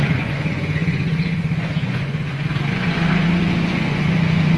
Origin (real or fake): fake